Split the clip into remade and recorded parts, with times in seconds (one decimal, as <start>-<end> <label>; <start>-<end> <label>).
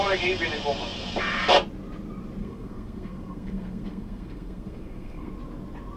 0.0-2.4 recorded; 2.4-5.3 remade; 5.3-6.0 recorded